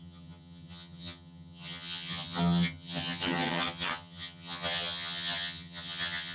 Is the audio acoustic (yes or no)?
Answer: no